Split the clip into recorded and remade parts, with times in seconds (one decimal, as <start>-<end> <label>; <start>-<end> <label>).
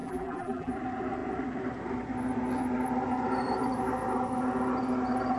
0.0-0.7 remade; 0.7-5.4 recorded